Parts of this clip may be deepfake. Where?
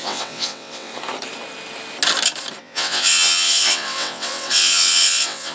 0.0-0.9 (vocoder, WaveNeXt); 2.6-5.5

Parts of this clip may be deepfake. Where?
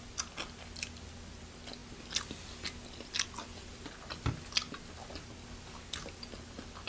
none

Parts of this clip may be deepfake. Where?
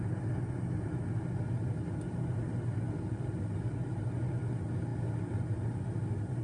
none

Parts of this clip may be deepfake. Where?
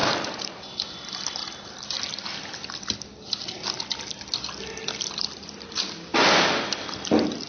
0.0-1.4 (vocoder, BigVGAN v2); 5.2-6.1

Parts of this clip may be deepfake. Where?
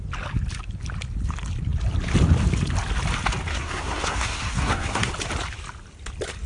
3.5-5.1 (codec, SNAC)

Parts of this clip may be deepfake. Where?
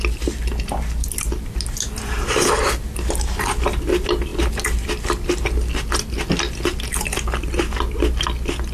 none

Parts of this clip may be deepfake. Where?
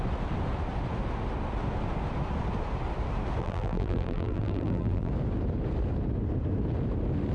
3.4-5.1 (vocoder, BigVGAN v2)